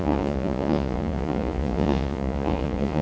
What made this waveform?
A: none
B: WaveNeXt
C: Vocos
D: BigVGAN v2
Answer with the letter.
C